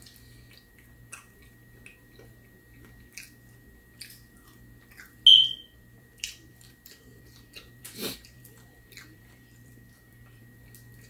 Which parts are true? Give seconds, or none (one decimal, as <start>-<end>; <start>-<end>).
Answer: 0.0-5.3; 10.4-11.1